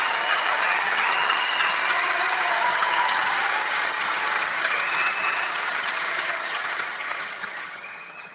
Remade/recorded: remade